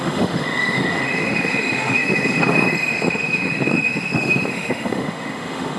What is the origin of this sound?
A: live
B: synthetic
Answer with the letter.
B